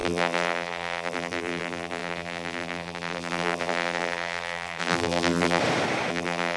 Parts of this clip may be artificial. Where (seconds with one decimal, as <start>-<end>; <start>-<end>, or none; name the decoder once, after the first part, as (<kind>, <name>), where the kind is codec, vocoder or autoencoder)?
0.0-5.6 (vocoder, BigVGAN v2); 6.1-6.6